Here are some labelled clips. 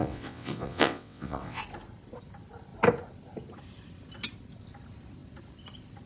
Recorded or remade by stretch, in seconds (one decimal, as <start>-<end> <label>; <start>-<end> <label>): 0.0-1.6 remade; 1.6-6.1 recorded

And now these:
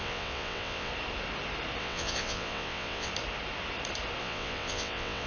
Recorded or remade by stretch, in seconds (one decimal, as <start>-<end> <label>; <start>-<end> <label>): 0.0-0.9 remade; 0.9-1.8 recorded; 1.8-3.1 remade; 3.1-4.2 recorded; 4.2-5.3 remade

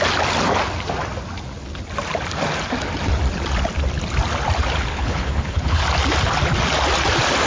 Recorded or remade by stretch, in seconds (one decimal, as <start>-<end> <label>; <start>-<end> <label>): 0.0-4.9 recorded; 4.9-5.8 remade; 5.8-7.5 recorded

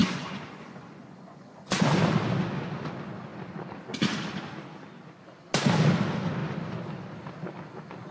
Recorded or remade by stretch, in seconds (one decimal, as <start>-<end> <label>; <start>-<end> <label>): 0.0-1.9 remade; 1.9-8.1 recorded

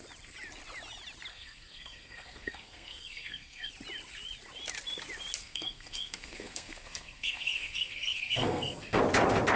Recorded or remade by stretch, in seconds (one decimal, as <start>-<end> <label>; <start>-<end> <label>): 0.0-1.3 recorded; 1.3-3.7 remade; 3.7-5.4 recorded; 5.4-9.0 remade; 9.0-9.6 recorded

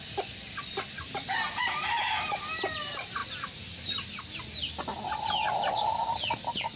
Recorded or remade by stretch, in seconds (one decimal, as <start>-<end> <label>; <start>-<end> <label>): 0.0-6.8 recorded